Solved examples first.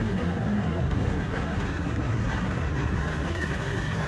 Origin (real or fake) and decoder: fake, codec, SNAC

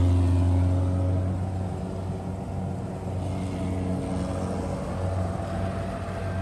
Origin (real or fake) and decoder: real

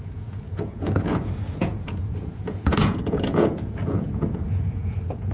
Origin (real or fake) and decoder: fake, vocoder, Vocos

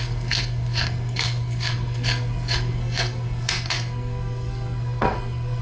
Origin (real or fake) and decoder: fake, codec, SNAC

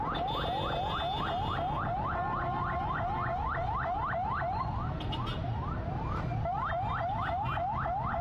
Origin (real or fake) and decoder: real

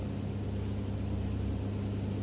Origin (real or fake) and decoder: real